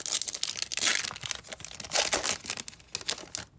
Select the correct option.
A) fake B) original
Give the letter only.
B